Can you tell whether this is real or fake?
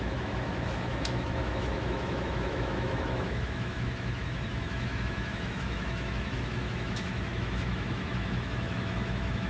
fake